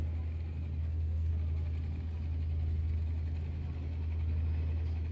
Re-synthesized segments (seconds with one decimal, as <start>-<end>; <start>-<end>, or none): 0.8-1.3